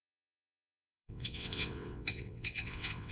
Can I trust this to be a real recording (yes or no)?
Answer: no